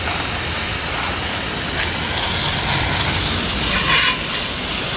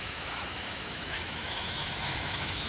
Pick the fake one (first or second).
second